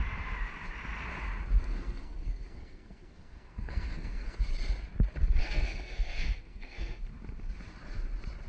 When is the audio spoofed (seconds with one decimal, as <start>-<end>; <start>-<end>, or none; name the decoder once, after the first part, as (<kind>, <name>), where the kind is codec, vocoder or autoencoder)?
1.6-4.4 (codec, SNAC); 5.4-7.0